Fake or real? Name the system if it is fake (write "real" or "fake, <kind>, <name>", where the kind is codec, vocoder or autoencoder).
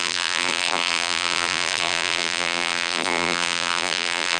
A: fake, vocoder, BigVGAN v2